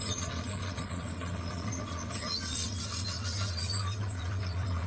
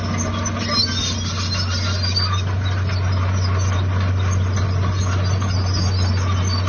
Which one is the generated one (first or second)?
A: first